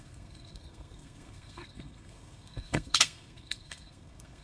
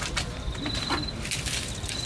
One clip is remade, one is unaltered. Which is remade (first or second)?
first